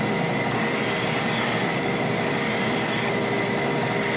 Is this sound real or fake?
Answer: real